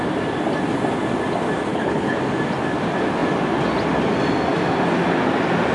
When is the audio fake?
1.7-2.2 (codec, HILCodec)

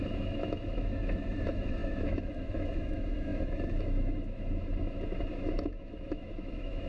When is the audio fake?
0.0-6.9 (autoencoder, DAC-VAE)

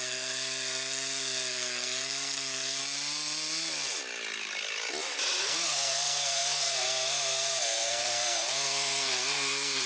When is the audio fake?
0.0-2.8 (codec, SNAC); 5.4-9.9

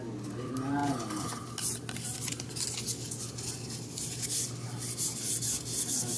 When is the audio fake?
none

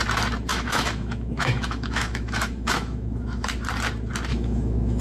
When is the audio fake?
0.5-3.5 (autoencoder, DAC-VAE); 4.3-5.0

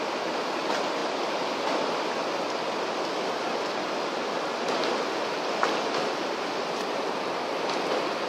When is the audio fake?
none